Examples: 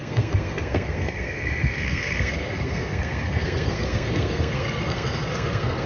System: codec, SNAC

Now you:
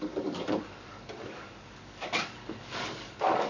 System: codec, DAC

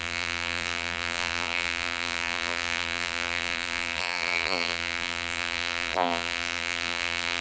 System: vocoder, BigVGAN v2